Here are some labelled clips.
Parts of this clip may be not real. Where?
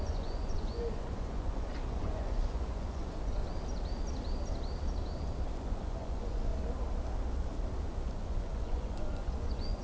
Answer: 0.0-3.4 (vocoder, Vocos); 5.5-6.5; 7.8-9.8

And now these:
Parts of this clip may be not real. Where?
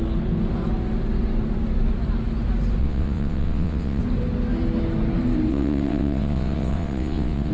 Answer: 2.8-4.0 (vocoder, WaveNeXt); 5.5-7.5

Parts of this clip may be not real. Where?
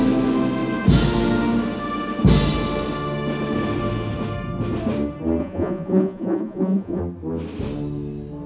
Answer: 5.4-7.0 (vocoder, Vocos)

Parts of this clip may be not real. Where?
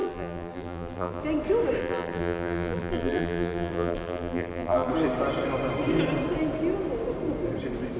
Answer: 0.0-1.2 (vocoder, BigVGAN v2); 1.8-4.9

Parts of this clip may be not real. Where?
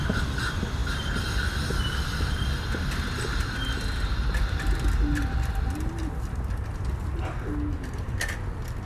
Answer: none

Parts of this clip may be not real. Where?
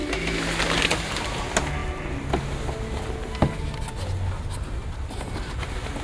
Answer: none